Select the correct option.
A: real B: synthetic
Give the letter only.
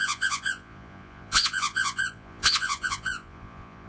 B